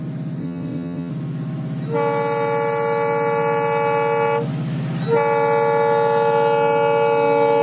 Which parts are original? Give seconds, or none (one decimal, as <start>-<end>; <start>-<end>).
0.0-0.4; 1.1-7.6